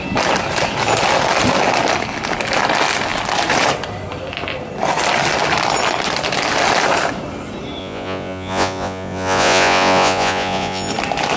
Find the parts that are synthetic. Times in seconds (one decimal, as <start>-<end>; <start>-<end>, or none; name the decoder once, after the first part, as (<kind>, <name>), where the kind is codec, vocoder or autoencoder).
7.8-10.9 (vocoder, Vocos)